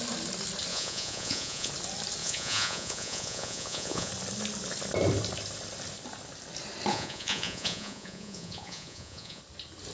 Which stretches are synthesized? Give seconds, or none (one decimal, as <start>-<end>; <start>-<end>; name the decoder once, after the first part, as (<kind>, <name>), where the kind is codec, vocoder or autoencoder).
0.7-1.7 (vocoder, Vocos); 2.2-4.1; 6.9-9.4